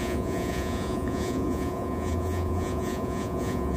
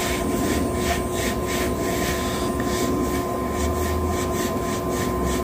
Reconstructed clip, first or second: first